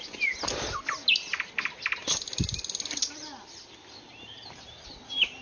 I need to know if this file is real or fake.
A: real